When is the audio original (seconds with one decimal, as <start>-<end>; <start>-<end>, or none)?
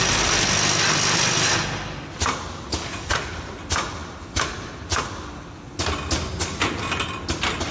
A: 0.0-7.7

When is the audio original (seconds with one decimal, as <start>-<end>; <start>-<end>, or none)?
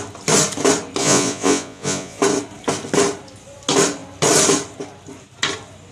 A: 0.0-1.0; 2.2-5.9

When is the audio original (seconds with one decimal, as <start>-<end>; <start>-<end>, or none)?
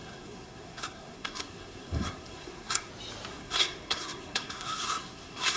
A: 2.9-3.3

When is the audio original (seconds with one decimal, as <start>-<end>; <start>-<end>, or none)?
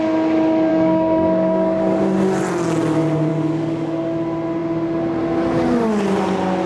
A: 0.0-0.7; 2.0-3.3; 4.0-6.7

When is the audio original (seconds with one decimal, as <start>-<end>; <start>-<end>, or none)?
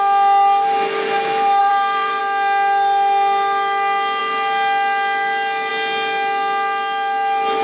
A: 0.0-1.6; 2.2-7.6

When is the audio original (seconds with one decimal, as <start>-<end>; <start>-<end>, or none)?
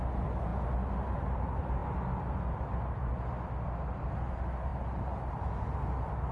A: 0.0-6.3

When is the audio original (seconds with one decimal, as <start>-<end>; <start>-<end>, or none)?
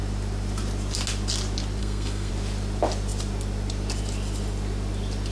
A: 0.0-1.8; 2.3-5.3